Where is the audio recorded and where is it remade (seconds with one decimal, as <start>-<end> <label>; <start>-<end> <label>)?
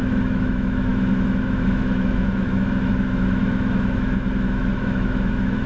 0.0-5.7 remade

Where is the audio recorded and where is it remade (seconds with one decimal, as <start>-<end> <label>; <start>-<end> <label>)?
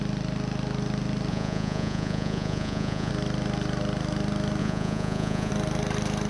0.0-1.3 recorded; 1.3-3.1 remade; 3.1-4.6 recorded; 4.6-5.5 remade; 5.5-6.3 recorded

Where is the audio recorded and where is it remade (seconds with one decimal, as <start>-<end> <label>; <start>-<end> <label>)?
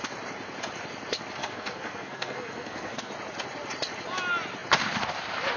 0.0-1.4 recorded; 1.4-3.1 remade; 3.1-5.6 recorded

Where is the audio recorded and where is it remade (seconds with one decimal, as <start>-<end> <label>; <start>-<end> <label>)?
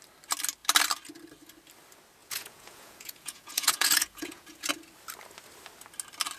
0.0-2.2 recorded; 2.2-4.7 remade; 4.7-6.4 recorded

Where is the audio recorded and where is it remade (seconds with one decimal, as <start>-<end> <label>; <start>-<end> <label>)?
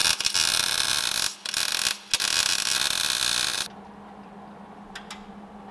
0.0-5.7 recorded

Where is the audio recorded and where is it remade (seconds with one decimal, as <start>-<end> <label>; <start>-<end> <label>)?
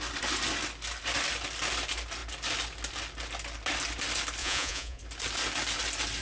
0.0-4.4 recorded; 4.4-5.0 remade; 5.0-6.2 recorded